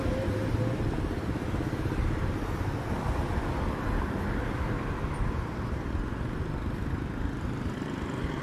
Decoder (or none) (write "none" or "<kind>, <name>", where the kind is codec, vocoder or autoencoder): none